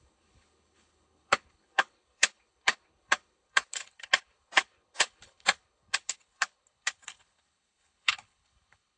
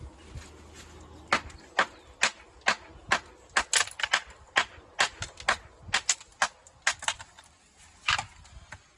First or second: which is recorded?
second